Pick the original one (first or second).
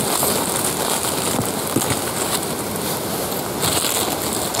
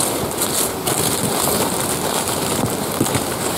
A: first